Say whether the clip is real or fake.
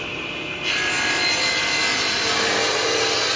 real